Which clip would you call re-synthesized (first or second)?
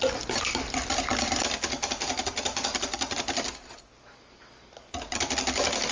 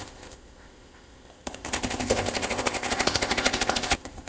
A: second